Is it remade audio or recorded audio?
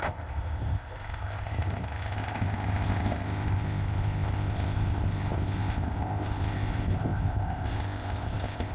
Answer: remade